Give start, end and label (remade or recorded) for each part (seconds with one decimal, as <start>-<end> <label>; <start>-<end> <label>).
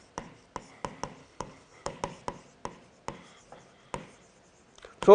0.0-1.2 recorded; 1.2-2.0 remade; 2.0-5.1 recorded